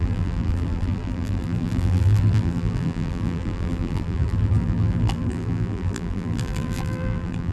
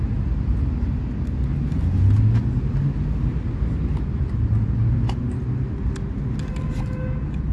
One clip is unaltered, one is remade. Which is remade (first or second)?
first